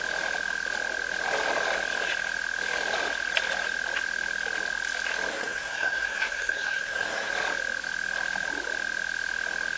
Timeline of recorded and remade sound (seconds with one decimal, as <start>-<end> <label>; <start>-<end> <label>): 0.0-5.3 recorded; 5.3-7.3 remade; 7.3-9.8 recorded